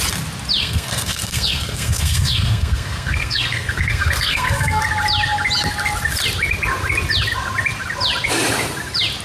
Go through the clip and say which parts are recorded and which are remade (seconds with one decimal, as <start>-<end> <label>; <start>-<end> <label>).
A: 0.0-0.6 recorded; 0.6-4.8 remade; 4.8-9.2 recorded